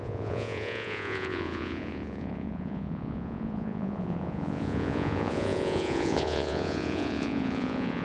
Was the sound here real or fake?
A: fake